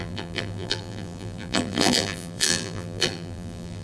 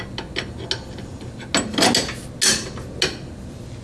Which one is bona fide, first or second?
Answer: second